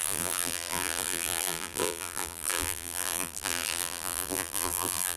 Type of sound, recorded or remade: remade